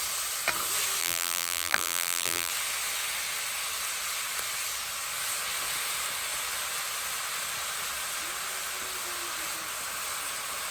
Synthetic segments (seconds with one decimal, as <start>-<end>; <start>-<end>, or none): 1.0-2.5